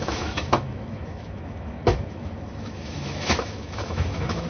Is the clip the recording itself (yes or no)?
no